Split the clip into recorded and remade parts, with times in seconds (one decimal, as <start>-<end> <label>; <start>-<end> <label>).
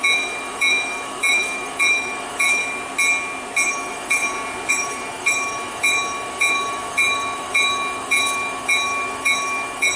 0.0-2.6 remade; 2.6-3.7 recorded; 3.7-4.2 remade; 4.2-4.7 recorded; 4.7-10.0 remade